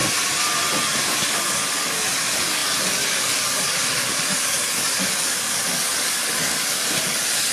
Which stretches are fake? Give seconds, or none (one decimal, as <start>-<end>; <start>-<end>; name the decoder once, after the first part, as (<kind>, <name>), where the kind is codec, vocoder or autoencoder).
1.1-7.5 (codec, DAC)